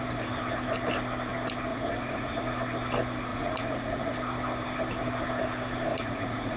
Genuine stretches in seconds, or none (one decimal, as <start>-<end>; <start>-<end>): 0.0-1.7; 2.4-3.3; 4.1-5.9